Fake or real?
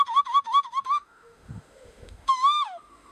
fake